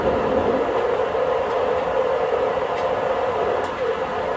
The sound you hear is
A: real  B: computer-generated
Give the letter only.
A